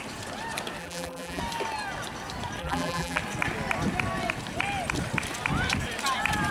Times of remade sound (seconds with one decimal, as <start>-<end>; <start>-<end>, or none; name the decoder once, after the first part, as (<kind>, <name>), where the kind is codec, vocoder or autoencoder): 0.8-1.4 (vocoder, BigVGAN v2); 2.6-3.2